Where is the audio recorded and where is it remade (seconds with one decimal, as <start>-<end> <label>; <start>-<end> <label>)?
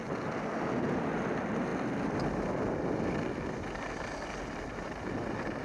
0.0-5.6 recorded